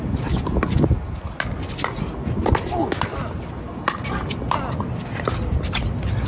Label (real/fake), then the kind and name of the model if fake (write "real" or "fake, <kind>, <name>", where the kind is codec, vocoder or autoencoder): real